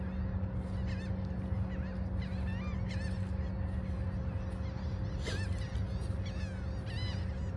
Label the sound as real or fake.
real